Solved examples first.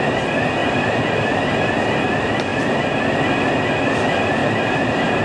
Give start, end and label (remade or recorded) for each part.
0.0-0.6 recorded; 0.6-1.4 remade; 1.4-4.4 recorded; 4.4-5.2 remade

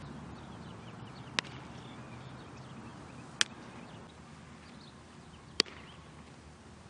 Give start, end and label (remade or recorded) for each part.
0.0-6.9 recorded

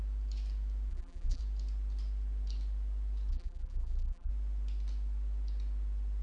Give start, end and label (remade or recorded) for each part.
0.0-0.9 recorded; 0.9-1.4 remade; 1.4-3.3 recorded; 3.3-4.3 remade; 4.3-6.2 recorded

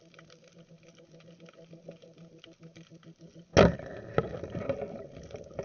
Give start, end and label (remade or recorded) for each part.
0.0-5.6 recorded

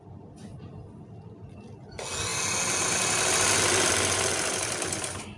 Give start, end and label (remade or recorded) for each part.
0.0-5.4 recorded

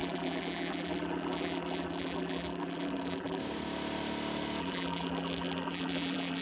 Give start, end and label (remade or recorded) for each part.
0.0-3.4 remade; 3.4-4.6 recorded; 4.6-6.4 remade